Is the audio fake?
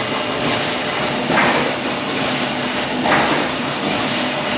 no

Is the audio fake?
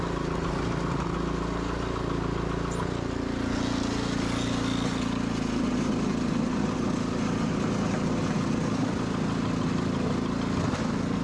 no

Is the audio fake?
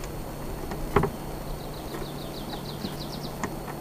no